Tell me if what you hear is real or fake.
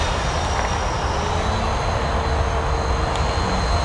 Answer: real